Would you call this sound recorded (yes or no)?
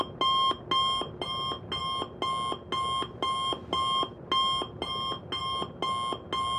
yes